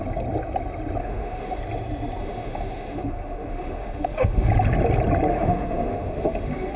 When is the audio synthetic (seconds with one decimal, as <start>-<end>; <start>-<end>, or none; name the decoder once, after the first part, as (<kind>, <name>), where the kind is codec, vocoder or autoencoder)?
1.0-1.6 (autoencoder, DAC-VAE); 2.2-4.5; 5.3-6.8